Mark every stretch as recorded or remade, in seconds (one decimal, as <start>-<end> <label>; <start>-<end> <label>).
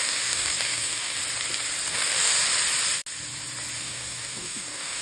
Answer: 0.0-1.2 remade; 1.2-1.9 recorded; 1.9-2.3 remade; 2.3-3.8 recorded; 3.8-5.0 remade